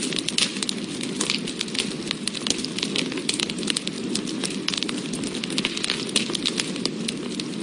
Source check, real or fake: real